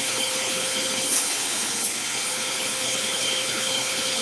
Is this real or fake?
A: fake